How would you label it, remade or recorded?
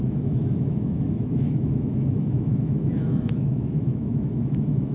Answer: remade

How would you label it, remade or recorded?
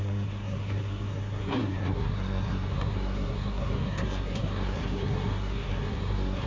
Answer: remade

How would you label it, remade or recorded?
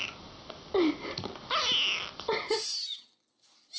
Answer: recorded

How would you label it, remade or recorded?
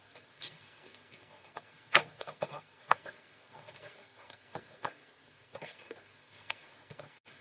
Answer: remade